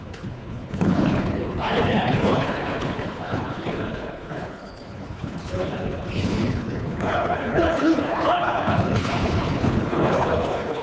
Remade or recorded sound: remade